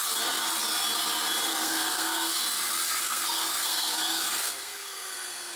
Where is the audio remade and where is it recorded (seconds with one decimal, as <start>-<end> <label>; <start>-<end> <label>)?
0.0-1.5 recorded; 1.5-2.3 remade; 2.3-3.0 recorded; 3.0-5.6 remade